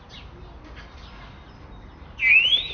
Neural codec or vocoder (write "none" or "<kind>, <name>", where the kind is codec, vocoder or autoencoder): none